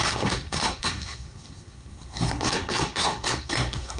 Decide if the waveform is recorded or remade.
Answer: remade